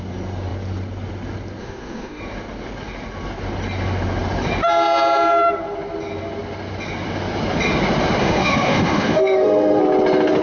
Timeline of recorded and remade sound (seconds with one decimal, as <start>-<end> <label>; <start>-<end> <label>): 0.0-1.6 recorded; 1.6-2.2 remade; 2.2-8.2 recorded; 8.2-9.8 remade; 9.8-10.4 recorded